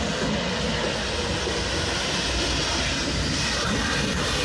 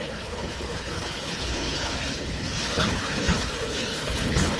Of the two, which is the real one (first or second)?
first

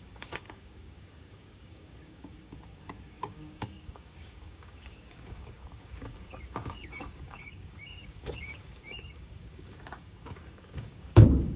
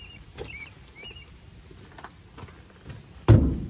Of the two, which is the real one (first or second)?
second